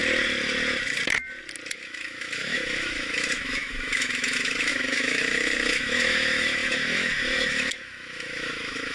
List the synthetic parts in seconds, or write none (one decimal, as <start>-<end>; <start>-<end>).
1.7-8.9